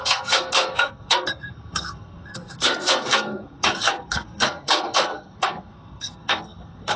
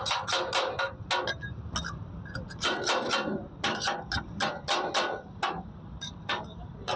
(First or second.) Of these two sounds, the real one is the second